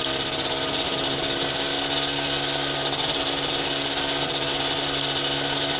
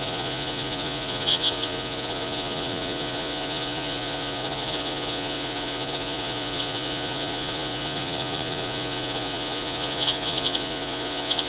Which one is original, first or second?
first